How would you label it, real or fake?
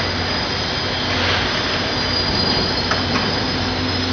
real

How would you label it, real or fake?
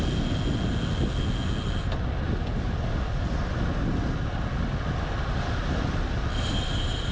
real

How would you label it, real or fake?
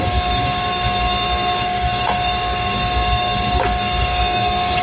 fake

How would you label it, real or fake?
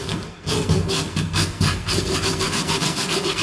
fake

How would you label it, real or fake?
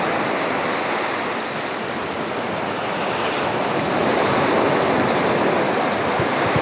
real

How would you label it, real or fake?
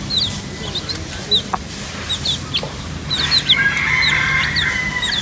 real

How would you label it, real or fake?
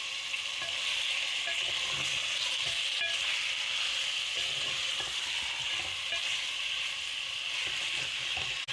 real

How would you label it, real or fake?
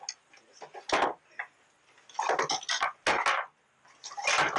real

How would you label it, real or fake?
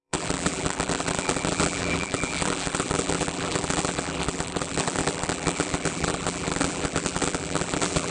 fake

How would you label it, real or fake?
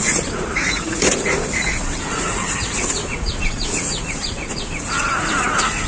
fake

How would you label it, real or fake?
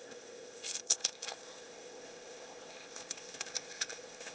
fake